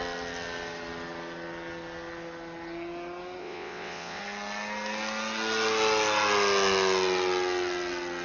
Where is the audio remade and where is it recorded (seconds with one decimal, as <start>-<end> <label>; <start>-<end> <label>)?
0.0-3.4 recorded; 3.4-4.2 remade; 4.2-8.2 recorded